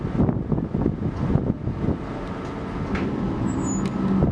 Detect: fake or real real